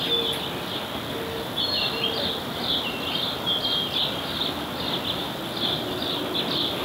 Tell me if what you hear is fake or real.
real